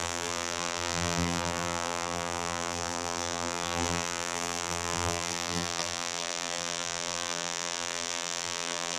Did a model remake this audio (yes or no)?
yes